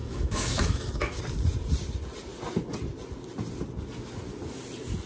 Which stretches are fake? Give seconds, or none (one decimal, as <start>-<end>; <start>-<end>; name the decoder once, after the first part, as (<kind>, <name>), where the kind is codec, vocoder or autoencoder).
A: 0.0-1.2 (autoencoder, DAC-VAE)